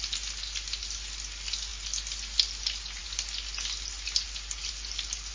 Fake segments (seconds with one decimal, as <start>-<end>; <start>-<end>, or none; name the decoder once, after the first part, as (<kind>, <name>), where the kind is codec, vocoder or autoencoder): none